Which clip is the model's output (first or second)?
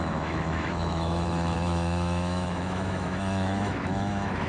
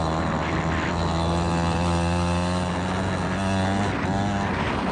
first